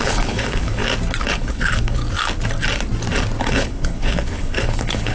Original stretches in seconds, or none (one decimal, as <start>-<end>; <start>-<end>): 0.8-1.3; 2.0-3.4

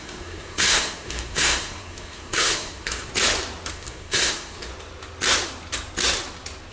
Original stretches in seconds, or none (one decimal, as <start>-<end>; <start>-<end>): 3.1-3.7; 4.7-6.7

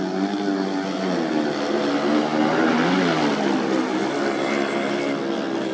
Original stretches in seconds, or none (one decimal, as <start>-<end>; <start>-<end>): 0.0-5.7

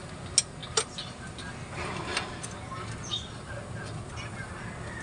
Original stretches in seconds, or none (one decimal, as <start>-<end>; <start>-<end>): 0.0-5.0

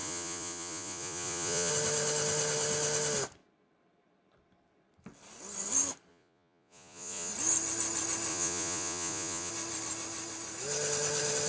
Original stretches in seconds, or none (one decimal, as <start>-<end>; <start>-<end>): 1.7-6.1; 7.3-8.3; 9.5-11.5